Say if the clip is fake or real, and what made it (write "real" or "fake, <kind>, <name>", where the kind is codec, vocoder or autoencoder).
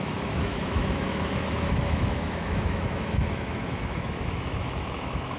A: fake, autoencoder, DAC-VAE